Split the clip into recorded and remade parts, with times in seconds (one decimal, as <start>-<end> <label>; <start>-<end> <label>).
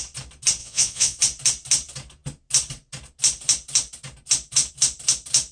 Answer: 0.0-0.6 recorded; 0.6-1.2 remade; 1.2-5.5 recorded